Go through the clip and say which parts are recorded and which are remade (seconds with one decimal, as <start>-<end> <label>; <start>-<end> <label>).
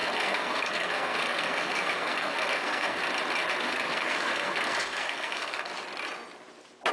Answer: 0.0-3.0 remade; 3.0-3.6 recorded; 3.6-5.7 remade; 5.7-6.9 recorded